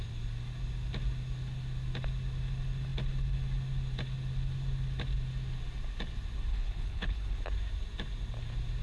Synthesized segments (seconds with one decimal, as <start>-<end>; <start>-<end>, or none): 6.5-7.4